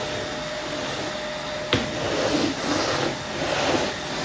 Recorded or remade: recorded